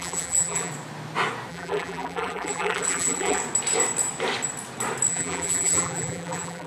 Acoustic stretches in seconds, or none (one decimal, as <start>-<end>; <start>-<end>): 0.7-1.5; 3.4-5.1